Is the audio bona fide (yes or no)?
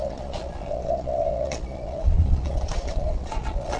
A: no